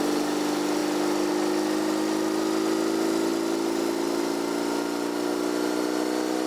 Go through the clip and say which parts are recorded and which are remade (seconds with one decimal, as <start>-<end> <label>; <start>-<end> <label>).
0.0-6.5 recorded